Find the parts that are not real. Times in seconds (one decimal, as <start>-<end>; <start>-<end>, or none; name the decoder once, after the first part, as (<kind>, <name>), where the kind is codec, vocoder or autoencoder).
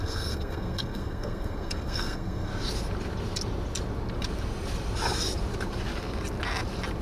0.0-2.5 (codec, SNAC)